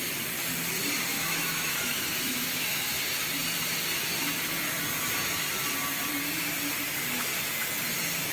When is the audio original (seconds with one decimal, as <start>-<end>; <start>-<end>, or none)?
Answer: 0.0-1.1; 3.0-8.3